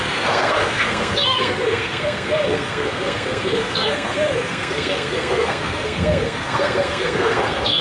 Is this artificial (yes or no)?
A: yes